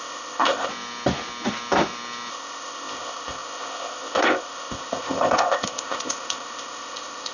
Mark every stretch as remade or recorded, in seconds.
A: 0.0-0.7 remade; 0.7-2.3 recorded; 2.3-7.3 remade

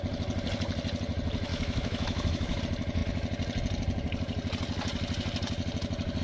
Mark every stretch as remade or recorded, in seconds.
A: 0.0-1.5 recorded; 1.5-2.6 remade; 2.6-6.2 recorded